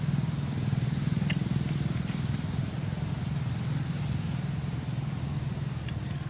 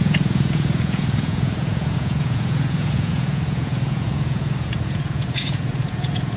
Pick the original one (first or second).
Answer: first